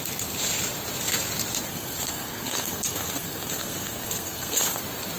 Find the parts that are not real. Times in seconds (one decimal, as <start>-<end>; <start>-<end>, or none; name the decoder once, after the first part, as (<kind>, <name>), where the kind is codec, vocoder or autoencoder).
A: 1.7-4.8 (codec, SNAC)